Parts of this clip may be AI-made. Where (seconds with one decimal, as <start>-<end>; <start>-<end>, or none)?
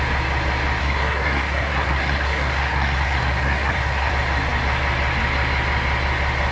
0.8-4.1